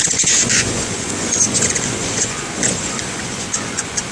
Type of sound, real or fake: fake